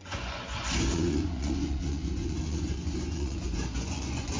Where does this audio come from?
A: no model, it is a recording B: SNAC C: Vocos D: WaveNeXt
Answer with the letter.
C